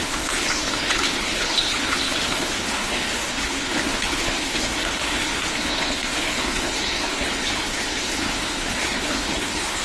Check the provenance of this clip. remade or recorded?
remade